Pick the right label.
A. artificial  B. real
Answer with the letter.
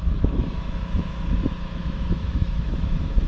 A